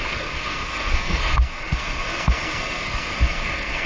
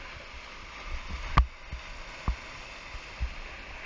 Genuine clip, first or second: second